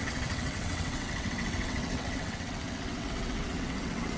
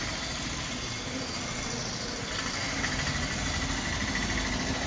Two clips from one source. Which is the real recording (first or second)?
second